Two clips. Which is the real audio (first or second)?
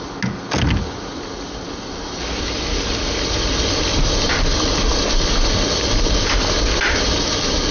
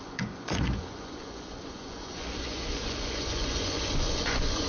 first